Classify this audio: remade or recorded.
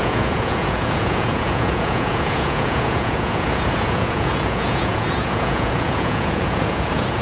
remade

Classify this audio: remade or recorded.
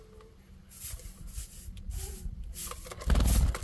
recorded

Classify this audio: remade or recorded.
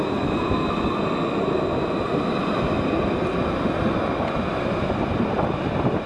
recorded